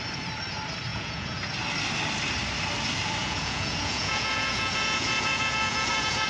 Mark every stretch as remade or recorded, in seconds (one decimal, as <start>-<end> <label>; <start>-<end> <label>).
0.0-0.9 recorded; 0.9-1.5 remade; 1.5-3.2 recorded; 3.2-6.3 remade